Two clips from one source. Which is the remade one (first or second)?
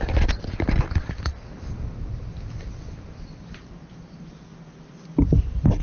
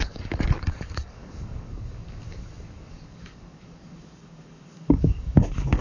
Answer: second